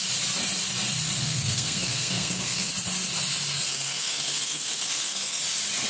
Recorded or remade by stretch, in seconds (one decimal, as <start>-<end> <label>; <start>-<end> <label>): 0.0-1.2 recorded; 1.2-2.7 remade; 2.7-3.7 recorded; 3.7-5.4 remade; 5.4-5.9 recorded